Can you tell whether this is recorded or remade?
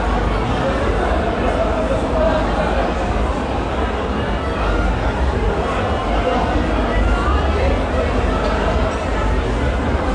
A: recorded